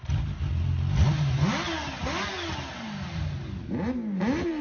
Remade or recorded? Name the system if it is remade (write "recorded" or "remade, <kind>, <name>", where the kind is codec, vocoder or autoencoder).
recorded